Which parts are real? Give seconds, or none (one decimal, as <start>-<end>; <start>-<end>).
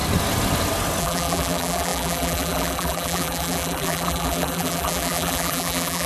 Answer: 0.0-1.0